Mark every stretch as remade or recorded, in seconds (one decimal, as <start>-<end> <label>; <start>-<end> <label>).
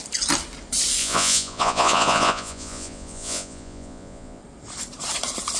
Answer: 0.0-1.0 recorded; 1.0-4.4 remade; 4.4-5.6 recorded